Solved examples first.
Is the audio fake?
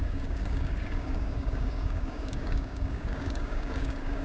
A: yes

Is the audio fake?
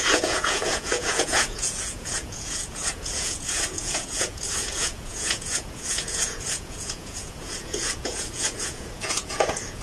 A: yes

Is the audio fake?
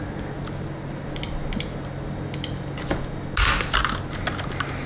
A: no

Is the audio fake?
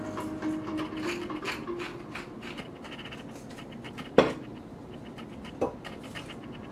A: no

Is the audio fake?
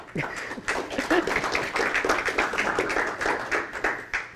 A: no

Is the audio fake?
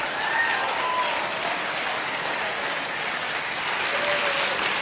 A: no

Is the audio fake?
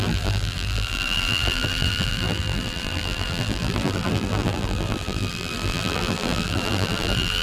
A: yes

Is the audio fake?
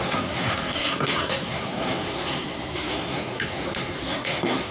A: yes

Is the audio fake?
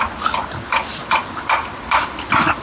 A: no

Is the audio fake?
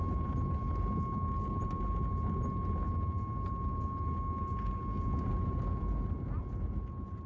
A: no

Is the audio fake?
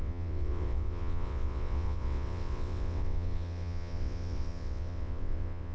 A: yes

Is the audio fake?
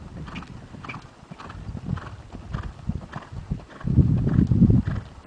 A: no